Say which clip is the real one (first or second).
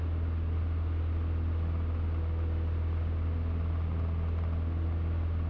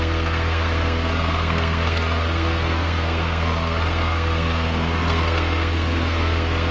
first